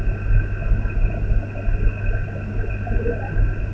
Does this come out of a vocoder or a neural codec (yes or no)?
no